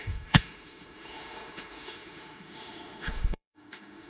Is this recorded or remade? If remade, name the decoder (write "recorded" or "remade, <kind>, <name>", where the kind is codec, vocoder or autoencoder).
remade, autoencoder, DAC-VAE